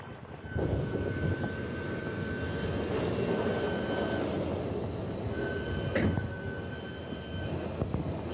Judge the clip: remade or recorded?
recorded